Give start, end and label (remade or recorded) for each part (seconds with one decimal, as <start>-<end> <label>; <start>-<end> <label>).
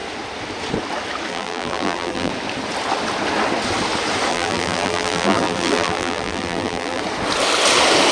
0.0-1.3 recorded; 1.3-2.3 remade; 2.3-4.3 recorded; 4.3-7.0 remade; 7.0-8.1 recorded